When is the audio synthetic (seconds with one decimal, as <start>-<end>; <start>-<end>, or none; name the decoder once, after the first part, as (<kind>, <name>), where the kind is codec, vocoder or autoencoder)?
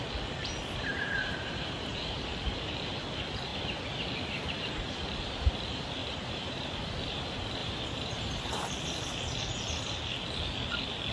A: 0.9-2.0 (vocoder, BigVGAN v2); 6.0-6.7; 7.6-8.7